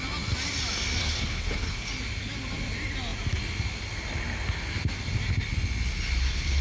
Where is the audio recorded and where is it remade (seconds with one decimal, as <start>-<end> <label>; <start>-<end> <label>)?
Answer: 0.0-1.0 recorded; 1.0-1.9 remade; 1.9-6.6 recorded